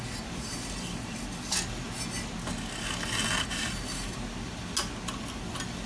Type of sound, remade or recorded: recorded